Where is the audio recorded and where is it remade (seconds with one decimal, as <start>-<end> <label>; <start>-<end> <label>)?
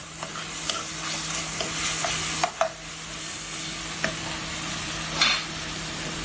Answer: 0.0-3.2 recorded; 3.2-3.8 remade; 3.8-6.2 recorded